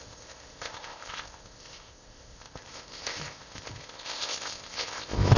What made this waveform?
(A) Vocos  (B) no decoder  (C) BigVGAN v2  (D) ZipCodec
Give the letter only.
D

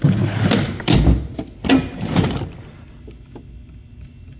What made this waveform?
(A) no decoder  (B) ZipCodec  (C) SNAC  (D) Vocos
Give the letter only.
A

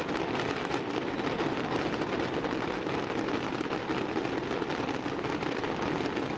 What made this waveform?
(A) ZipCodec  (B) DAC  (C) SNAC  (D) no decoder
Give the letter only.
D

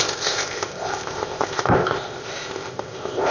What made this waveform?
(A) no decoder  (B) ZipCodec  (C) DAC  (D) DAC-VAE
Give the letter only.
B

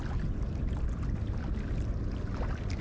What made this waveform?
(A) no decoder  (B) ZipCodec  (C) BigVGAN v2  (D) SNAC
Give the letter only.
A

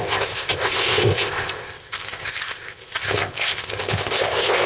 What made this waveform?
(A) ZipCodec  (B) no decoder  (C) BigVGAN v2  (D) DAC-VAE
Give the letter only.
A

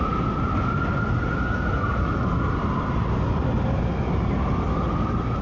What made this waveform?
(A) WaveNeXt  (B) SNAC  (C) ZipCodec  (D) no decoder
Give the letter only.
D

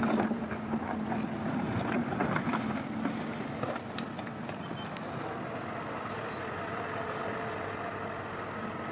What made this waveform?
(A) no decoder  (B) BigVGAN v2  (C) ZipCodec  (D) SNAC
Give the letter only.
A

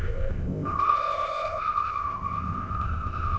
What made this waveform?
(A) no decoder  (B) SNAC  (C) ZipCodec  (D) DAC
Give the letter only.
C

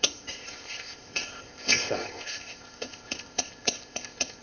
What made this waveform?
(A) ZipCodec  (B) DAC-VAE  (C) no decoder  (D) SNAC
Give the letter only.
A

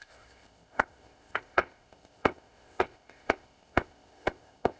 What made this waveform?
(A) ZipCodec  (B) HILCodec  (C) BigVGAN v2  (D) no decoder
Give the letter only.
A